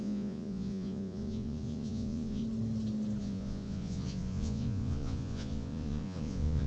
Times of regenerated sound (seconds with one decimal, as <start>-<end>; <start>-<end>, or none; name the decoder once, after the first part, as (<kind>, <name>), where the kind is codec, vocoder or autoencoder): 0.0-2.4 (vocoder, Vocos); 3.2-6.7